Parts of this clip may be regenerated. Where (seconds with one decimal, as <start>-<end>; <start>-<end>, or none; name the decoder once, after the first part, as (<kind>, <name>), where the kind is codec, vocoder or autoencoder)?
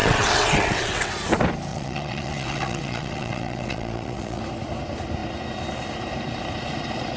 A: 0.0-1.1 (vocoder, WaveNeXt); 1.7-4.4